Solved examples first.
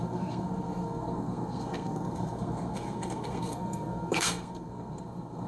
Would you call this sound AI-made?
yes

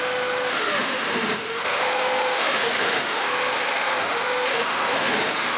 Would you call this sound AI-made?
yes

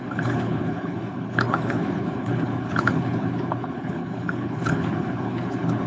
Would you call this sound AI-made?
yes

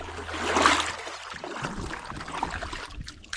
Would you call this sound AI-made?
no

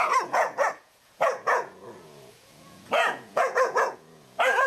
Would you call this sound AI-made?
yes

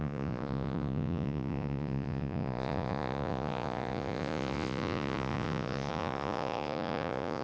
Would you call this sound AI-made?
yes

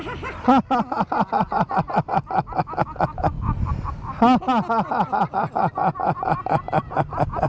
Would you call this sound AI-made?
no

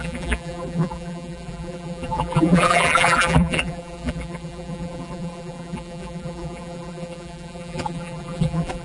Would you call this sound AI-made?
yes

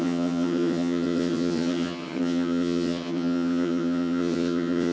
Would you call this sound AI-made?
yes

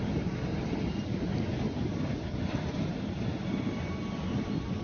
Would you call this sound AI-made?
no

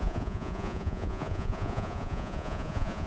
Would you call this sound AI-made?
yes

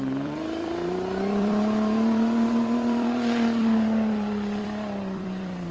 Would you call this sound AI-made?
yes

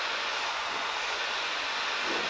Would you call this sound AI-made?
yes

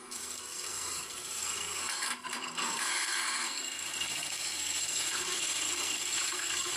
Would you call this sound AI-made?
yes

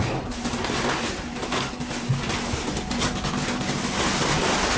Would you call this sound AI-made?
no